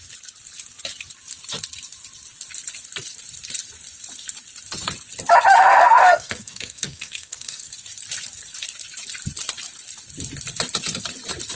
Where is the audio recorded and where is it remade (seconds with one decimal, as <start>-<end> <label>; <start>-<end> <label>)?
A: 0.0-5.6 recorded; 5.6-7.7 remade; 7.7-11.6 recorded

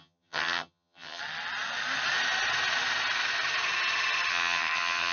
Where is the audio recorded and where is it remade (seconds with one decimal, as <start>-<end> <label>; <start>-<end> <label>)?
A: 0.0-1.2 remade; 1.2-4.3 recorded; 4.3-5.1 remade